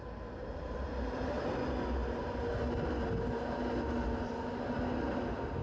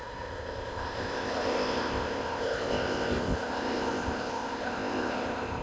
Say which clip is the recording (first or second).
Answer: first